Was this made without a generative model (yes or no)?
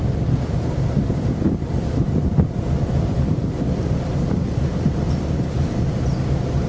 no